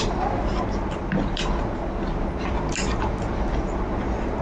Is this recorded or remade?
recorded